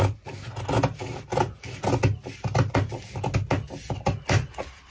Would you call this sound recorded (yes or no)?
yes